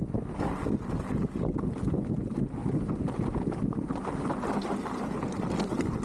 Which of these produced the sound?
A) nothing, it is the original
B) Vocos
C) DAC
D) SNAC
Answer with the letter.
A